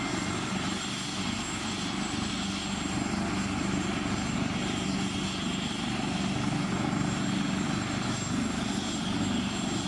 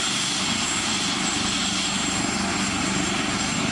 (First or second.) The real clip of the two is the first